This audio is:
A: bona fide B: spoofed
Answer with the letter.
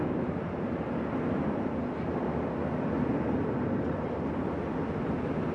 A